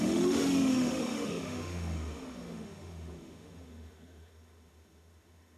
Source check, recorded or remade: remade